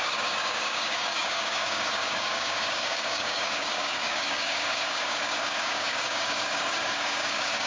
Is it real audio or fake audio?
fake